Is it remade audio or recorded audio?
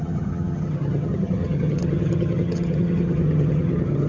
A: remade